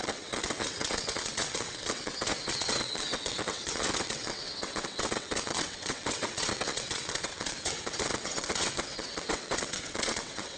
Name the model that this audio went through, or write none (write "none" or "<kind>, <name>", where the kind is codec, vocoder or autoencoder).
vocoder, WaveNeXt